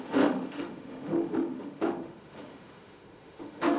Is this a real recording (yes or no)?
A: no